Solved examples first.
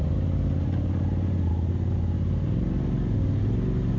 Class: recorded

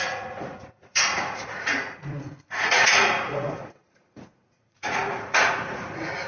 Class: remade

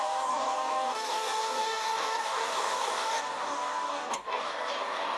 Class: remade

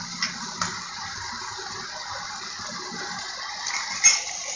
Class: recorded